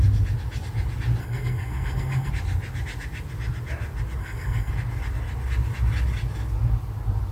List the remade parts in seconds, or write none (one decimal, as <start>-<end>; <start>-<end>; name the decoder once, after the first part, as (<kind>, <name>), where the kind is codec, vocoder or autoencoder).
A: 1.2-2.3 (codec, SNAC); 4.2-4.7